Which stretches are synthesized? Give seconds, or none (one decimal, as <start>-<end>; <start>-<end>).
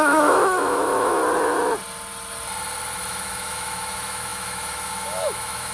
0.0-1.2; 2.9-5.7